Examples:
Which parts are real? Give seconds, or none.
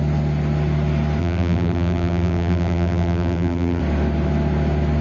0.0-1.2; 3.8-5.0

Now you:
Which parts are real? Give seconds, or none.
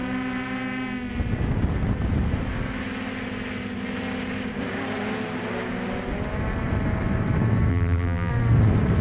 0.0-7.7; 8.3-9.0